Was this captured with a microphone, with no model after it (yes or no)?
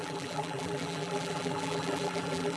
no